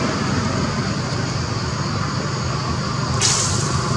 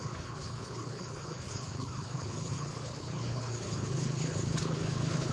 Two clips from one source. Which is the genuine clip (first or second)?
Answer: first